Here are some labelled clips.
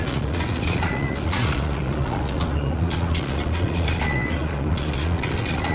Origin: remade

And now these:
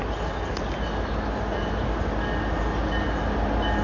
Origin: recorded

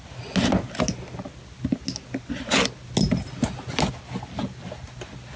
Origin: recorded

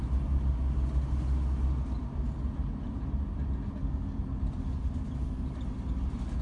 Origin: recorded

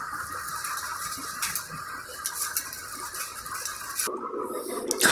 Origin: recorded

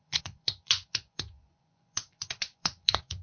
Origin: remade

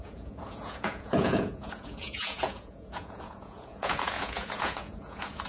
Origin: remade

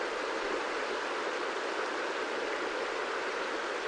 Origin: recorded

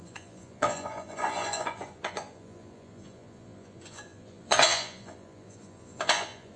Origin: remade